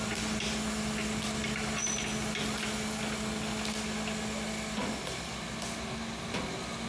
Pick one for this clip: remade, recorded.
recorded